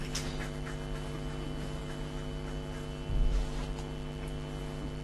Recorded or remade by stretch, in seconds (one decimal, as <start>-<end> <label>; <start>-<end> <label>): 0.0-5.0 recorded